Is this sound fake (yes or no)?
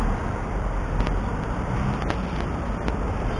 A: no